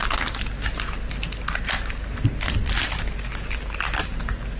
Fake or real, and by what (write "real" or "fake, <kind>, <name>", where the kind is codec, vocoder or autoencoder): real